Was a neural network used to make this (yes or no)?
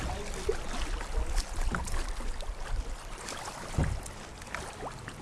no